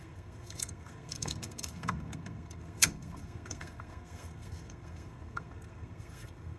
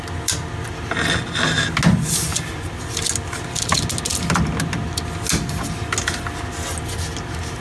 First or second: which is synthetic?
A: first